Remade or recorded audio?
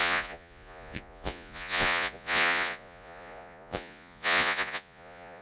remade